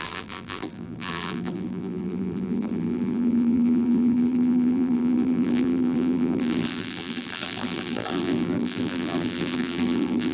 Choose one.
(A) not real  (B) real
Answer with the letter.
A